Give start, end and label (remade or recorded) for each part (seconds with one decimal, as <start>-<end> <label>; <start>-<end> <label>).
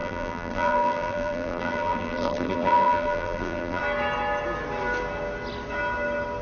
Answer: 0.0-3.8 remade; 3.8-6.4 recorded